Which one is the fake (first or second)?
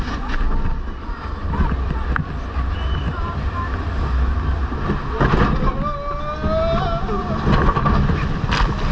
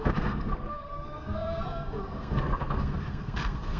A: second